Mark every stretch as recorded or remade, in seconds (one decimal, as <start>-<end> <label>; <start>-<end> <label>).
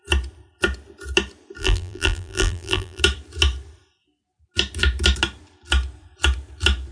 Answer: 0.0-1.6 recorded; 1.6-3.0 remade; 3.0-6.9 recorded